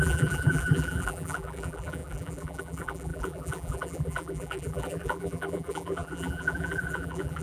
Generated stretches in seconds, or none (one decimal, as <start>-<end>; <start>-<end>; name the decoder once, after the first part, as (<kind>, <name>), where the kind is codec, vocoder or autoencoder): 0.0-7.4 (vocoder, BigVGAN v2)